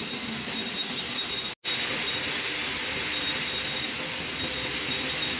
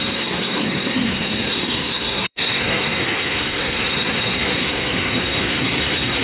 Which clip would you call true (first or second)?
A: first